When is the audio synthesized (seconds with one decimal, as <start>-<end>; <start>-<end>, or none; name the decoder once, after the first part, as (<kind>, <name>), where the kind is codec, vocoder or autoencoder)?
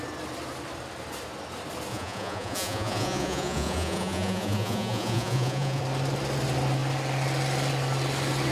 1.9-5.8 (vocoder, Vocos)